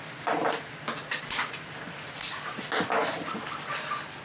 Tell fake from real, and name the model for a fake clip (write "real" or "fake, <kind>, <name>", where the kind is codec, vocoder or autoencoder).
real